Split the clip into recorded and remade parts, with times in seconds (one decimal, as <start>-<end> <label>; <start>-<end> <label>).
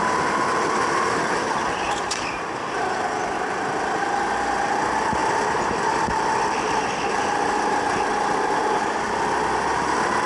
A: 0.0-10.3 recorded